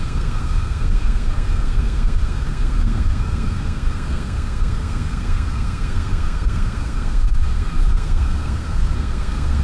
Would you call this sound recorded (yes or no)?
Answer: no